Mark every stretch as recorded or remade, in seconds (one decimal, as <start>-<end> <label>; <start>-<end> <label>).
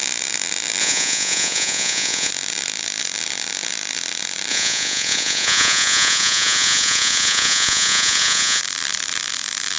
0.0-0.8 recorded; 0.8-2.3 remade; 2.3-4.5 recorded; 4.5-8.6 remade; 8.6-9.8 recorded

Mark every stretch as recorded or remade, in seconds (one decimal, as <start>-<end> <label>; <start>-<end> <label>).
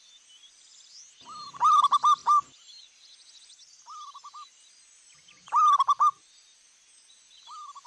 0.0-7.9 recorded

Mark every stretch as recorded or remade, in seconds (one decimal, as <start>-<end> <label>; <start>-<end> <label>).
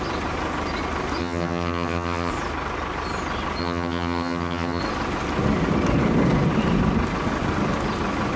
0.0-1.2 recorded; 1.2-2.3 remade; 2.3-3.6 recorded; 3.6-4.8 remade; 4.8-8.4 recorded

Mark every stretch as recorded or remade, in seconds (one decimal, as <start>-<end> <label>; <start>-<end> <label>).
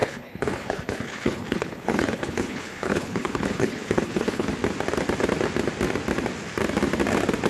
0.0-4.5 remade; 4.5-7.5 recorded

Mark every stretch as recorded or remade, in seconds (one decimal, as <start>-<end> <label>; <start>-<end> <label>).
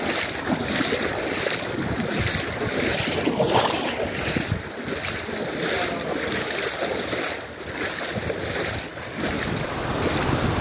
0.0-10.6 recorded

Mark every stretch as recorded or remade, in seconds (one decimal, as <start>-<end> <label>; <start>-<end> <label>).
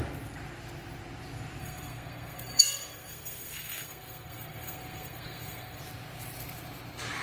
0.0-1.6 recorded; 1.6-5.8 remade; 5.8-7.2 recorded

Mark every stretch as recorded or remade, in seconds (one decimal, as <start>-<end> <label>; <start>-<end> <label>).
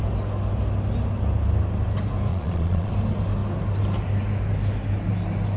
0.0-2.3 recorded; 2.3-2.9 remade; 2.9-5.6 recorded